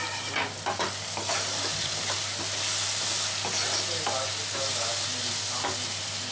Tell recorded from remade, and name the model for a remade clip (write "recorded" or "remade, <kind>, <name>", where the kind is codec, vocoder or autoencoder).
recorded